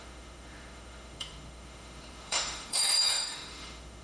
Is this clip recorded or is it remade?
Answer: remade